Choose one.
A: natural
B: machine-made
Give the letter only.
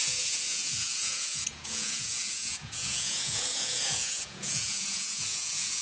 B